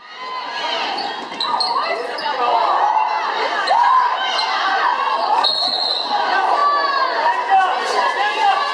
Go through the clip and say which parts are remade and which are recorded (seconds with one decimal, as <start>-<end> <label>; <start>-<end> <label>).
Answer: 0.0-4.9 recorded; 4.9-6.1 remade; 6.1-8.7 recorded